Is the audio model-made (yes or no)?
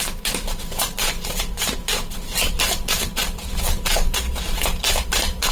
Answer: yes